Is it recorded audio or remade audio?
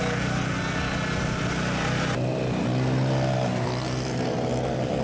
recorded